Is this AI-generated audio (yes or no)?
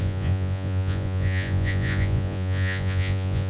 yes